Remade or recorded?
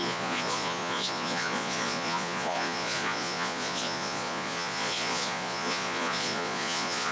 remade